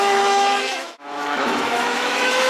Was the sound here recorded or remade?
remade